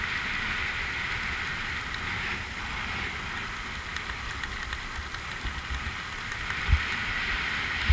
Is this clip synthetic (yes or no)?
no